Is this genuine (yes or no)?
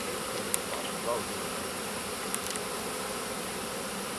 no